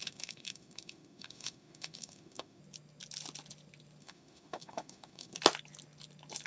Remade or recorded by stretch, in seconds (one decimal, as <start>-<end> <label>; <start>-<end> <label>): 0.0-2.6 remade; 2.6-4.0 recorded; 4.0-5.4 remade; 5.4-6.5 recorded